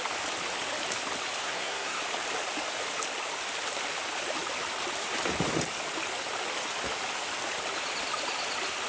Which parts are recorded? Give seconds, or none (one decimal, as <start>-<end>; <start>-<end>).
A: 0.0-1.4; 2.0-8.9